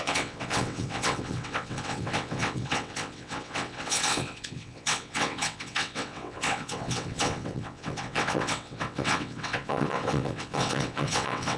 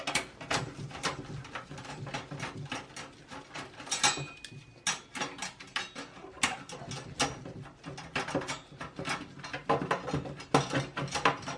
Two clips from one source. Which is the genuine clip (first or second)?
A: second